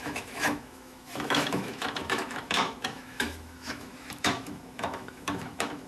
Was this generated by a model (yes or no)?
yes